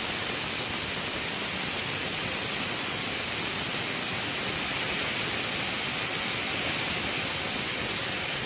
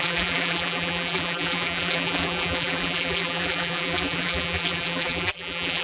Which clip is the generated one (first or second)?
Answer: second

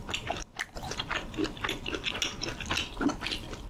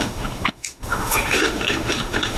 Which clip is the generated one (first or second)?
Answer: second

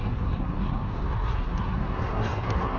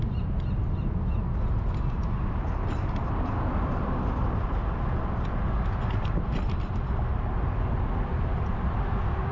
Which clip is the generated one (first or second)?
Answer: first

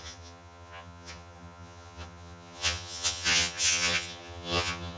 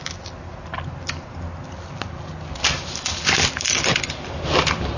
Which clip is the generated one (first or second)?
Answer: first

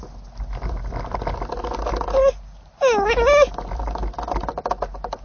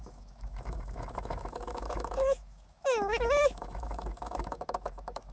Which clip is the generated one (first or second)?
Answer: second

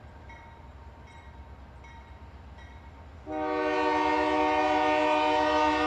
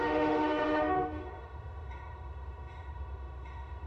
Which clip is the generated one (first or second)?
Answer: second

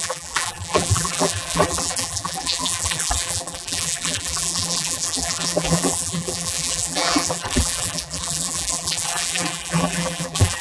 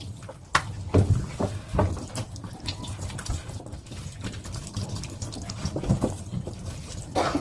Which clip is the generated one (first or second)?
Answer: first